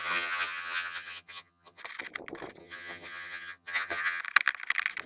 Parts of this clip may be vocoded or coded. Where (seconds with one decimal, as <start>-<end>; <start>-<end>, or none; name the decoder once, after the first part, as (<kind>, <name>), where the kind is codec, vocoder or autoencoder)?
0.0-1.8 (vocoder, HiFi-GAN); 2.6-4.2